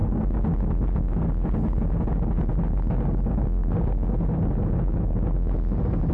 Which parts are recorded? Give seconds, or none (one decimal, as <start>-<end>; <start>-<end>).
0.0-6.1